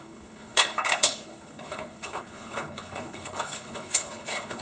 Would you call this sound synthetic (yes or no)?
yes